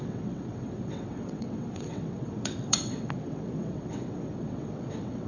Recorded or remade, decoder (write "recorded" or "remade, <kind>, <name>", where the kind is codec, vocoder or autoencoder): remade, vocoder, WaveNeXt